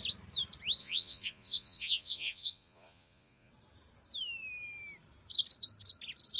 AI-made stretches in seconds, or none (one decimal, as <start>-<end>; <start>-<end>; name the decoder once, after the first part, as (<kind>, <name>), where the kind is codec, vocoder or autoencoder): 0.8-3.5 (vocoder, Vocos)